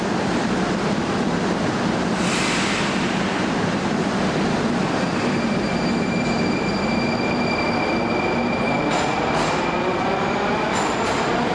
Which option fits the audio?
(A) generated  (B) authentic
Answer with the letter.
A